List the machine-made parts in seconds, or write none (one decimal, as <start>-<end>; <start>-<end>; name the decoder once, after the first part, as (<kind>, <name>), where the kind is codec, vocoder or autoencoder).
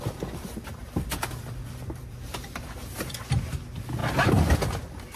0.8-3.2 (vocoder, BigVGAN v2)